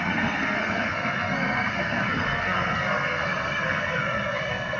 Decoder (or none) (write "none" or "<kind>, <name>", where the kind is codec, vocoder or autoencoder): codec, SNAC